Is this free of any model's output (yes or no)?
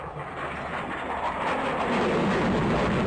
yes